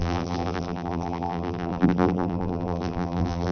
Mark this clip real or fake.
fake